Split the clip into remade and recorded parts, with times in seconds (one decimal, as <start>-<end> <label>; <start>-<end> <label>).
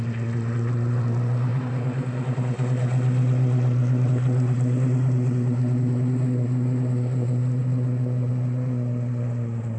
0.0-9.8 recorded